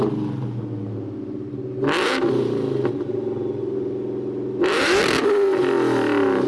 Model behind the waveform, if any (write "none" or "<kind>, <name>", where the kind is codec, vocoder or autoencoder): none